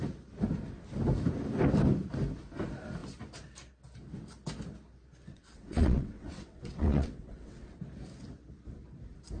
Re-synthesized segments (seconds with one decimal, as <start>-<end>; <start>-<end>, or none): 5.3-7.8